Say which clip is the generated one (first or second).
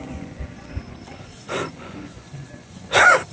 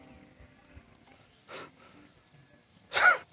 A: first